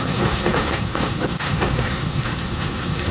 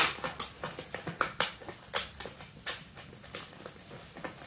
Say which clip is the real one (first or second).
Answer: second